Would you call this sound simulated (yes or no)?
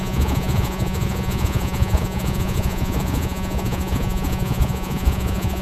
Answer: yes